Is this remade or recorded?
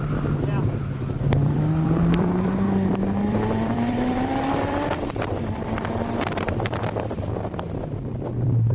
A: remade